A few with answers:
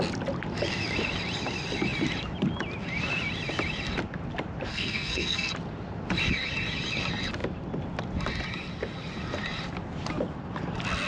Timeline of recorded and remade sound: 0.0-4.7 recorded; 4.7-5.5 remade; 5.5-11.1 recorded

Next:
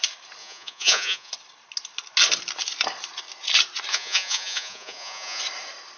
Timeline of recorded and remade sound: 0.0-0.4 recorded; 0.4-1.3 remade; 1.3-3.9 recorded; 3.9-5.4 remade; 5.4-6.0 recorded

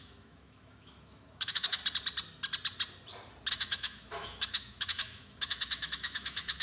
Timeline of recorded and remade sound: 0.0-1.8 remade; 1.8-3.5 recorded; 3.5-6.6 remade

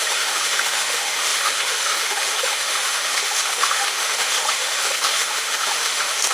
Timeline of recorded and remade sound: 0.0-6.3 remade